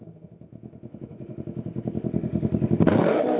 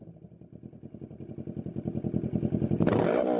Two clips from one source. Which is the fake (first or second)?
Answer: first